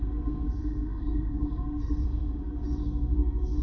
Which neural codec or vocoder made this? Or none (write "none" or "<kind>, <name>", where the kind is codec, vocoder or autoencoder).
codec, SNAC